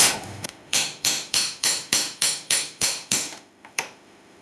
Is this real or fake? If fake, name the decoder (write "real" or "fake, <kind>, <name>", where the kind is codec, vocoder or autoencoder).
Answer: fake, autoencoder, DAC-VAE